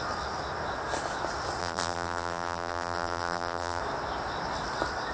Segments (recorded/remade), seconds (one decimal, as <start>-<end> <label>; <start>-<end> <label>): 0.0-1.6 recorded; 1.6-3.8 remade; 3.8-5.1 recorded